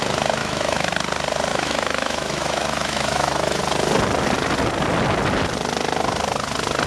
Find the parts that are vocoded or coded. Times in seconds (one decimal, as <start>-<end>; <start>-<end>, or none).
0.4-0.9; 1.5-3.6